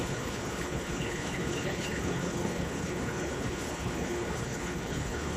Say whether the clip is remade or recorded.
remade